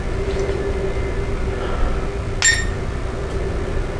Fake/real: real